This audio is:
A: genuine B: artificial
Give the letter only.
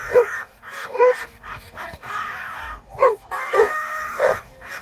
B